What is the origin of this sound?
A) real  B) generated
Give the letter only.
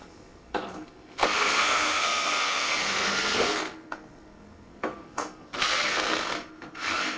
B